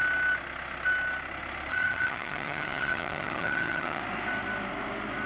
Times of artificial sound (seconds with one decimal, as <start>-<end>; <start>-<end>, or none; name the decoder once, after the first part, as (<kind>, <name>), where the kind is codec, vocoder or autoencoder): 1.7-4.0 (vocoder, HiFi-GAN)